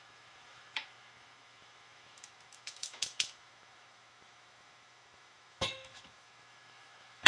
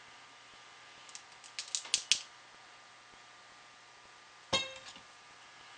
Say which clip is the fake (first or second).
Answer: first